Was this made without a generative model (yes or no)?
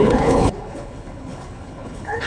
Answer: no